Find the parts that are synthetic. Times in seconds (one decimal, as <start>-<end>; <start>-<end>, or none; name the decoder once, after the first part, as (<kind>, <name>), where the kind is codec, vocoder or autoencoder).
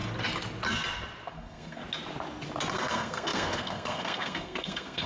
1.3-1.8 (codec, SNAC); 2.7-5.1